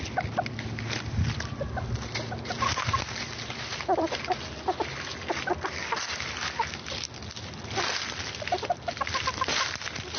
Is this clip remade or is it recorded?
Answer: recorded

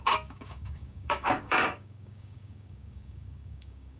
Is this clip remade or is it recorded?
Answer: remade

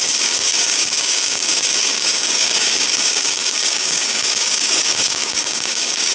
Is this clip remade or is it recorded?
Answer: remade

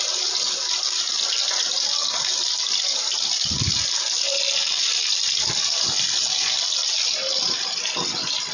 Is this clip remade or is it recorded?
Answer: recorded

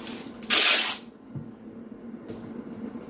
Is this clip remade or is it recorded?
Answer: recorded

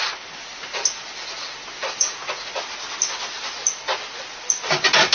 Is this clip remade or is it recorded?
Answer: recorded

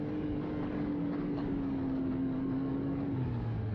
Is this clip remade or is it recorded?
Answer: remade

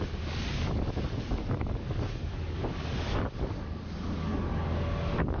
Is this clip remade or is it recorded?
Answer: remade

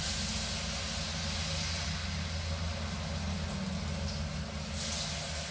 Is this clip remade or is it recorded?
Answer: recorded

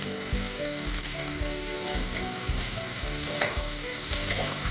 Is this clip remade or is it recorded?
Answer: remade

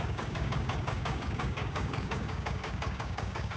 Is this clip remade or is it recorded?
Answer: remade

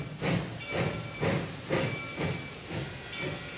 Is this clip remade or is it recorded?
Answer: recorded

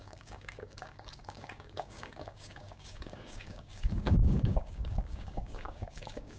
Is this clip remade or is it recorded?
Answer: remade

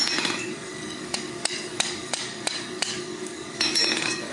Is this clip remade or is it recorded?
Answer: remade